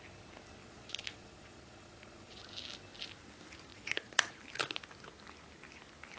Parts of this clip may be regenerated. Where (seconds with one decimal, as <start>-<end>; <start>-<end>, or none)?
0.6-2.4; 3.7-4.3